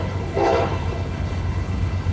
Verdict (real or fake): fake